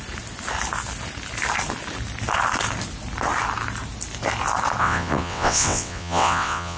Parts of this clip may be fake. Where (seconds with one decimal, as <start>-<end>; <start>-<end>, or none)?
4.8-6.8